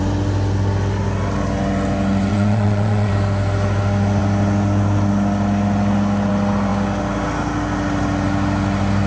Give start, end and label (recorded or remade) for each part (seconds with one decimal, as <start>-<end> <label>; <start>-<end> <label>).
0.0-2.3 recorded; 2.3-3.1 remade; 3.1-9.1 recorded